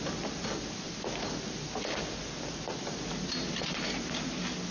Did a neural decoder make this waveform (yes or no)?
no